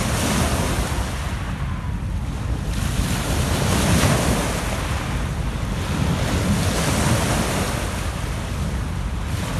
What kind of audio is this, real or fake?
real